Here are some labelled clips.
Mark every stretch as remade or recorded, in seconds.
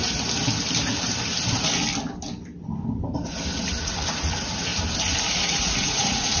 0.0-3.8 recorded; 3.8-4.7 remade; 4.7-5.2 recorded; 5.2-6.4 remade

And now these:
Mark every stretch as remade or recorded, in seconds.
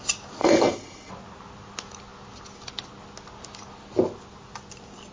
0.0-0.4 recorded; 0.4-1.1 remade; 1.1-5.1 recorded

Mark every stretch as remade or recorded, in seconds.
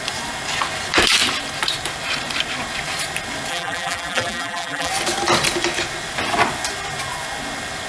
0.0-3.5 recorded; 3.5-4.9 remade; 4.9-7.9 recorded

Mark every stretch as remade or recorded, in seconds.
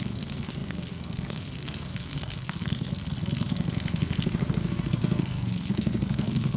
0.0-2.9 remade; 2.9-3.5 recorded; 3.5-6.6 remade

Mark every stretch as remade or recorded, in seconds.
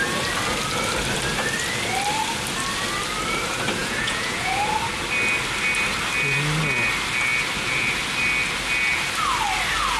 0.0-3.8 recorded; 3.8-4.6 remade; 4.6-10.0 recorded